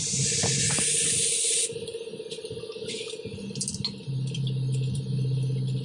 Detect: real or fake real